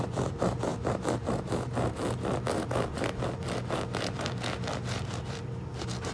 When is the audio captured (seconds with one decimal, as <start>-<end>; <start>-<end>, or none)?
0.0-6.1